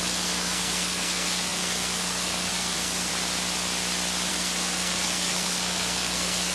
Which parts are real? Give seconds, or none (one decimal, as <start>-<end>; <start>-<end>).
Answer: 3.1-4.3